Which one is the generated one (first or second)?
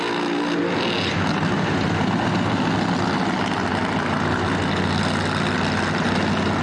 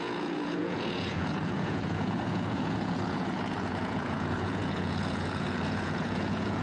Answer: second